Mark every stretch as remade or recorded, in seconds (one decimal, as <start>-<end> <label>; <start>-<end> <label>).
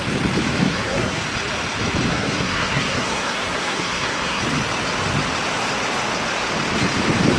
0.0-0.6 recorded; 0.6-1.2 remade; 1.2-2.1 recorded; 2.1-4.4 remade; 4.4-7.4 recorded